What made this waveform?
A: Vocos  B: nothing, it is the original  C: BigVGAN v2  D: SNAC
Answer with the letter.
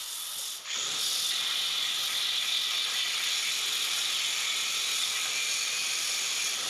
B